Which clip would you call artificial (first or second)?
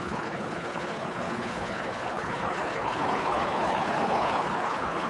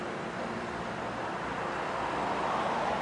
first